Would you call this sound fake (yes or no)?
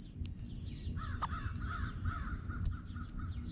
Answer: no